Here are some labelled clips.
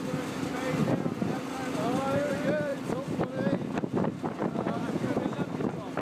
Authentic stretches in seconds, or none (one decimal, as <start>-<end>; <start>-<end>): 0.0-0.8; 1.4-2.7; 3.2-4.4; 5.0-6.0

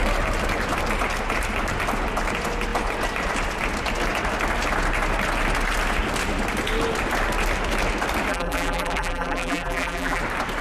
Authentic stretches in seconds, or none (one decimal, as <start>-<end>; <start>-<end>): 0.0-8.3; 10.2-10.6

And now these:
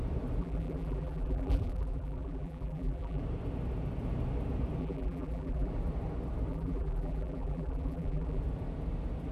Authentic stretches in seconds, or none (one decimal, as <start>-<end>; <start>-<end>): 0.0-0.4; 3.2-4.8; 5.7-6.5; 8.4-9.3

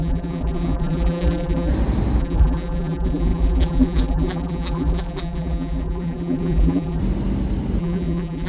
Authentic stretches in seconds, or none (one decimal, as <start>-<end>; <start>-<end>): 1.7-2.2; 7.0-7.8

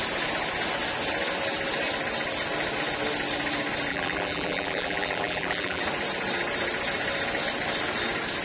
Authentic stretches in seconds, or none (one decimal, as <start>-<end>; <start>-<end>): 0.0-3.9; 5.8-8.4